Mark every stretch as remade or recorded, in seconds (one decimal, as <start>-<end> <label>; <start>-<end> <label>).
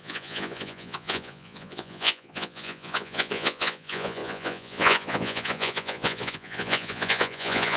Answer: 0.0-7.8 remade